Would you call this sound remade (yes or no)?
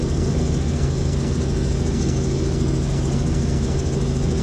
yes